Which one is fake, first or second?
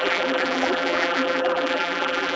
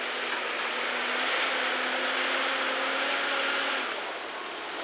first